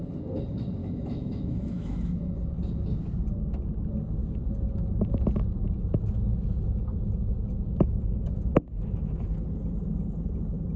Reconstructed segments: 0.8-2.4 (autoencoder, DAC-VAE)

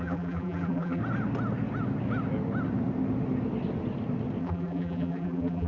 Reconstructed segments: 0.0-1.0 (vocoder, BigVGAN v2); 4.4-5.7

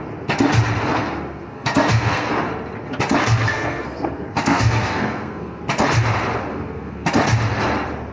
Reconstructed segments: 0.9-2.3 (codec, SNAC); 3.2-5.6; 6.5-7.1